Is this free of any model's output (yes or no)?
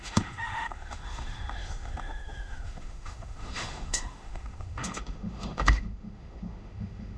no